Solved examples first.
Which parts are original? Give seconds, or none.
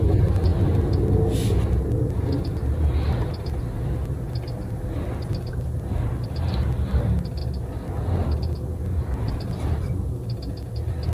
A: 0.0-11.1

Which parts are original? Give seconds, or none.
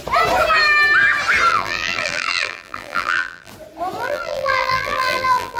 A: 0.0-1.5; 3.5-4.0